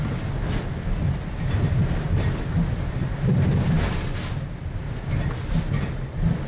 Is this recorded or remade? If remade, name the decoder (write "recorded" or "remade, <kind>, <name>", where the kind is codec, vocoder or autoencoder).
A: recorded